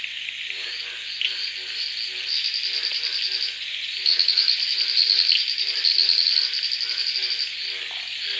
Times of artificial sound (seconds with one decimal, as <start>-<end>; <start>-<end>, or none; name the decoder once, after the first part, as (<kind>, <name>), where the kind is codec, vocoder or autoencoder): 4.0-4.5 (autoencoder, DAC-VAE)